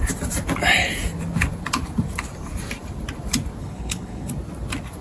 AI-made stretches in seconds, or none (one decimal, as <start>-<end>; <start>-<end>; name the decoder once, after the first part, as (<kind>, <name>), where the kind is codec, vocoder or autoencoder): 3.6-4.3 (codec, HILCodec)